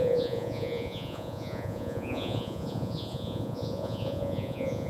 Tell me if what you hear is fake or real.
fake